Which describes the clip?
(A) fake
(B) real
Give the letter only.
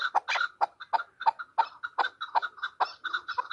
B